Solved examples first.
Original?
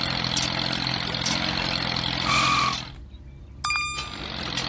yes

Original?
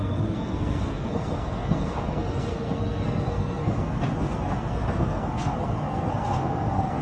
no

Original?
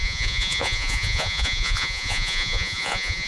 no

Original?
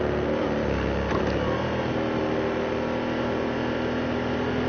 yes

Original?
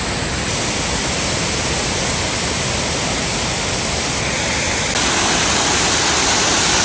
yes